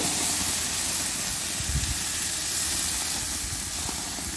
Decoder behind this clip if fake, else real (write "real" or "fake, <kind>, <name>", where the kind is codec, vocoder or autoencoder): real